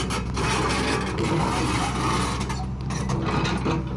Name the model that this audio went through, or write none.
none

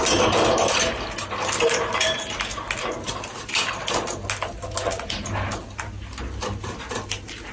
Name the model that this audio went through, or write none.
none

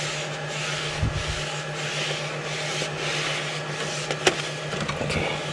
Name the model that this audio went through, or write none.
none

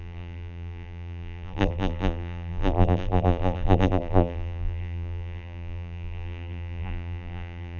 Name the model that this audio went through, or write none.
vocoder, BigVGAN v2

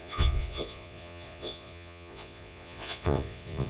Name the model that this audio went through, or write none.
vocoder, Vocos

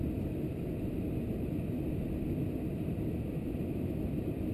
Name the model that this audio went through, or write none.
none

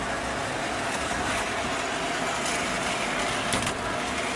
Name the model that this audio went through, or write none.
none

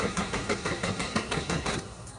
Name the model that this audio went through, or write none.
codec, SNAC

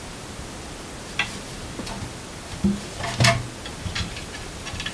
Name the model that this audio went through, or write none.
none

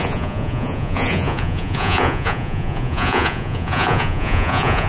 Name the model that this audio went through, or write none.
vocoder, Vocos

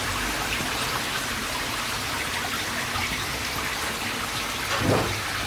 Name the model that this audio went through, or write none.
none